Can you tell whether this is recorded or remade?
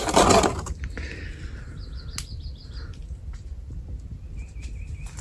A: recorded